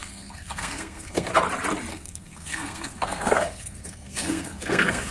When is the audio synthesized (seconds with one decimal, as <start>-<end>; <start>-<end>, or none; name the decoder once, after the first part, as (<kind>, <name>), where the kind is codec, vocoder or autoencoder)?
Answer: 0.0-1.3 (codec, SNAC); 1.9-5.1